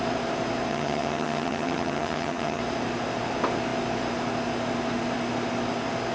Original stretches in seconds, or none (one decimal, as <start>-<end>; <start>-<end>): 0.0-0.7; 2.6-6.1